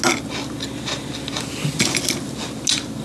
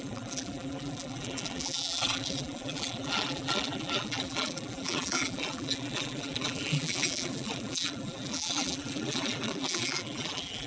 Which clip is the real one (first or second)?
first